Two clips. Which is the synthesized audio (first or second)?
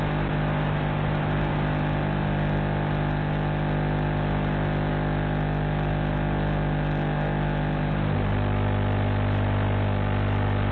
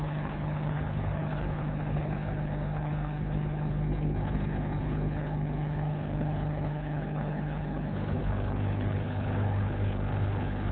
second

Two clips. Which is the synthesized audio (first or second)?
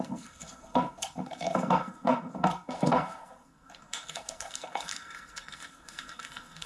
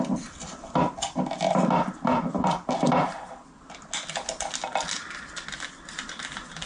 first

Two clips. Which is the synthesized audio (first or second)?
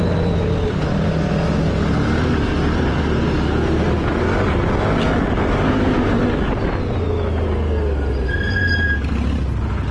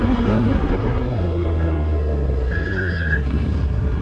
second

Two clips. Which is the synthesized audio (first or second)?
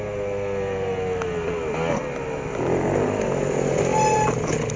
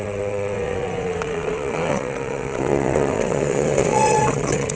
second